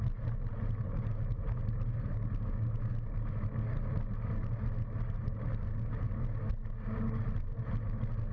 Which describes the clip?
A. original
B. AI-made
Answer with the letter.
A